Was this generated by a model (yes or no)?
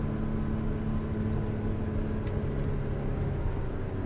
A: no